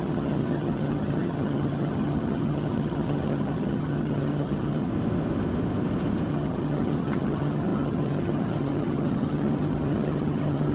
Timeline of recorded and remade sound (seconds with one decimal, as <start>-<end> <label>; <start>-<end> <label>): 0.0-4.9 remade; 4.9-6.3 recorded; 6.3-10.7 remade